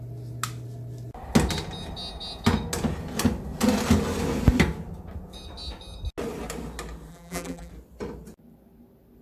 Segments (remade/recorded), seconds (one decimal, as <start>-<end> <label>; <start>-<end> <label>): 0.0-7.1 recorded; 7.1-7.7 remade; 7.7-9.2 recorded